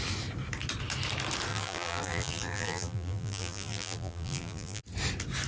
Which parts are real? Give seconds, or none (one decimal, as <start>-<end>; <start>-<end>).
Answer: 0.0-1.5; 4.8-5.5